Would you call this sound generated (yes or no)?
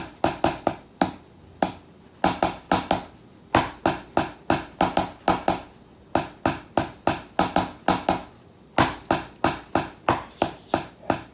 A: no